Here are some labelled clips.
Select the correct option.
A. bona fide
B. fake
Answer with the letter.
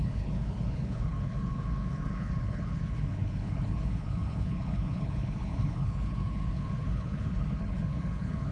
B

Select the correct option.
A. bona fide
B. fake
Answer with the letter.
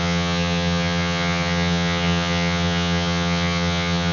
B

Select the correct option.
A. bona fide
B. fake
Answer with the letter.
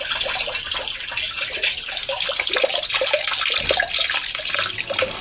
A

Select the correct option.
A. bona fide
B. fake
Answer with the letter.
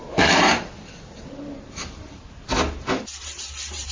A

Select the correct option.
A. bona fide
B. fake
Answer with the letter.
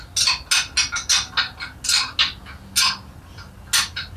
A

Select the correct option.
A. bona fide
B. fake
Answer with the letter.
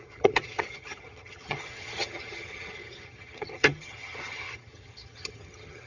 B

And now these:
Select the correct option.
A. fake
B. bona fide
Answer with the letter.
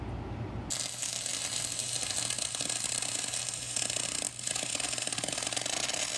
B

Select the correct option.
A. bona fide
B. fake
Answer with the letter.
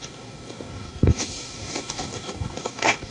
B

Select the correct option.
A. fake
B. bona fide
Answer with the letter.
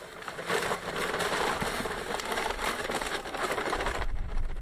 A